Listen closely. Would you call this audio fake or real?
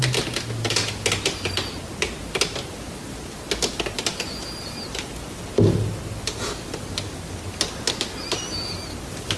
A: real